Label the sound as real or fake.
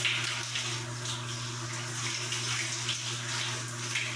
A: real